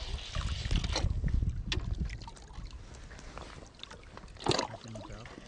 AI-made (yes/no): no